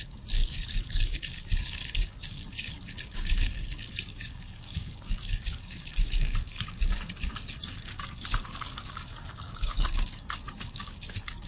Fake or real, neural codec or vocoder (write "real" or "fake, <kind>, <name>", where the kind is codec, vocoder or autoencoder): fake, codec, DAC